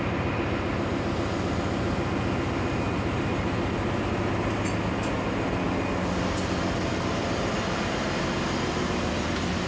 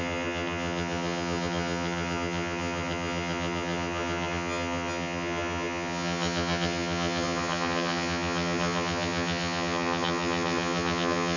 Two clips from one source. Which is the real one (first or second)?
first